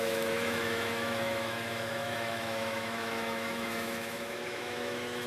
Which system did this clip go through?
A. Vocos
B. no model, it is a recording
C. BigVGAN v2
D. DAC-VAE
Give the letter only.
D